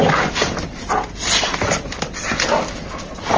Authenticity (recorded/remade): recorded